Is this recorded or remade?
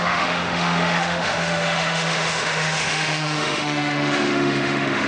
remade